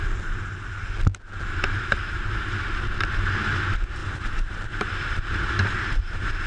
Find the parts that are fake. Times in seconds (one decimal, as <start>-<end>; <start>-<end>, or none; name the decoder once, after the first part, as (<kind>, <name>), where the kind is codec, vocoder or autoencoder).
4.0-6.5 (vocoder, BigVGAN v2)